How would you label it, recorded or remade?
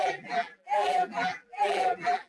remade